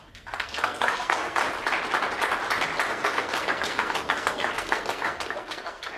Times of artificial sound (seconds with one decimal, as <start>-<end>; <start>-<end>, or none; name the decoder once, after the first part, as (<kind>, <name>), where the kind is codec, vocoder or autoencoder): 0.0-1.4 (codec, SNAC); 2.9-6.0